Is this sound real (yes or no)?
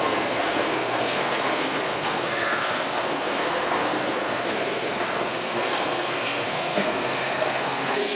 no